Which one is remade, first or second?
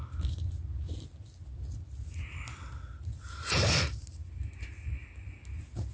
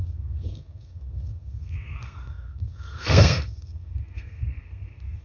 second